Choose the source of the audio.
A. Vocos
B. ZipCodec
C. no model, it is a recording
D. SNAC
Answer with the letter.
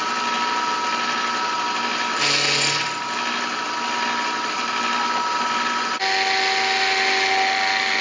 C